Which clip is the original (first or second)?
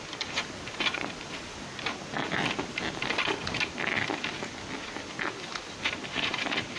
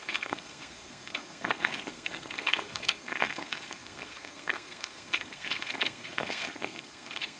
first